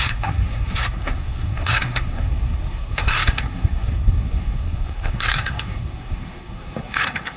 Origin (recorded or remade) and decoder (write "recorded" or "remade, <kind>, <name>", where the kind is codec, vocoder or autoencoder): remade, codec, SNAC